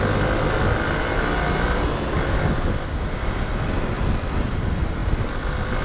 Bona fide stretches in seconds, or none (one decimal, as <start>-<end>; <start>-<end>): 0.0-5.8